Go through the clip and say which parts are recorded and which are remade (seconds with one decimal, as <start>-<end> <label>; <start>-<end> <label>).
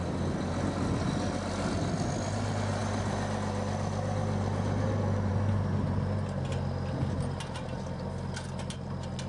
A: 0.0-9.3 recorded